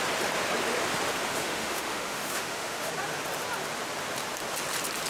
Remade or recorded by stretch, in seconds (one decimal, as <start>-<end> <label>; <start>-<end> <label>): 0.0-1.4 recorded; 1.4-2.9 remade; 2.9-5.1 recorded